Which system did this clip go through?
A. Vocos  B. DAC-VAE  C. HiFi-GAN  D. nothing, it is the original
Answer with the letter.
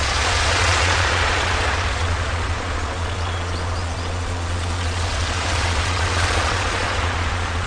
A